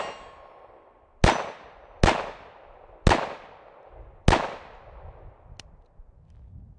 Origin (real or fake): real